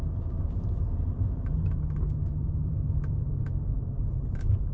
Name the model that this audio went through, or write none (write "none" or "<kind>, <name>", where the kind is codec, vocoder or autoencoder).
vocoder, BigVGAN v2